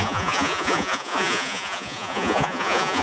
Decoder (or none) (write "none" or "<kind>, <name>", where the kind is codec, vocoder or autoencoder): vocoder, Vocos